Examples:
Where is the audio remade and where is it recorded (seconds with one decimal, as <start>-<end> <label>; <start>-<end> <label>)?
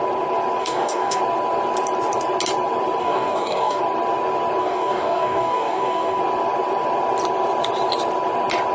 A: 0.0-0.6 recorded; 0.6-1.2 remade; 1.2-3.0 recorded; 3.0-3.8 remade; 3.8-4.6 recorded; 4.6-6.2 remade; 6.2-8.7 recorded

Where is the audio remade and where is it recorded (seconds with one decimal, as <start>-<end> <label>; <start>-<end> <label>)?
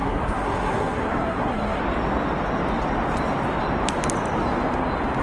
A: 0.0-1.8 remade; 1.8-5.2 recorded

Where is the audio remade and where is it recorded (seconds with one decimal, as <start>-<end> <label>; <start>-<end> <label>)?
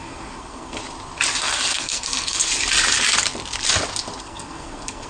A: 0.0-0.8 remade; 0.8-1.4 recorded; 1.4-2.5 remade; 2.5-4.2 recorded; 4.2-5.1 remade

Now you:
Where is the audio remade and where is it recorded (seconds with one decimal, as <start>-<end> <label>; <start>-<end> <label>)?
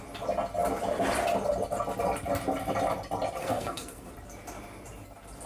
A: 0.0-3.4 recorded; 3.4-4.1 remade; 4.1-5.5 recorded